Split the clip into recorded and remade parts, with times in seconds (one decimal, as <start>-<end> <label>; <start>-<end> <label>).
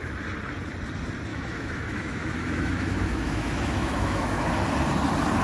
0.0-1.3 recorded; 1.3-4.5 remade; 4.5-5.4 recorded